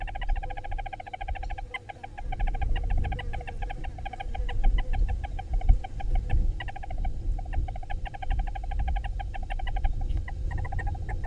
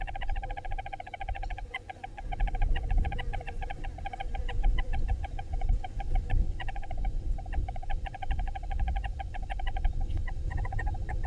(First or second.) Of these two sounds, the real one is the first